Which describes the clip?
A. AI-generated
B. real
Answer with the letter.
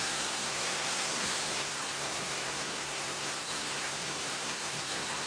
A